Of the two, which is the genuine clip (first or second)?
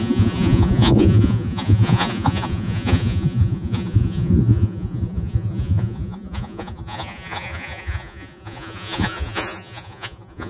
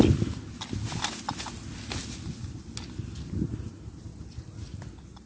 second